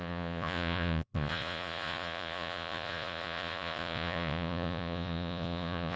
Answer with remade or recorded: remade